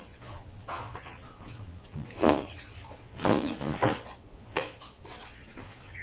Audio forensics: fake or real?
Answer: fake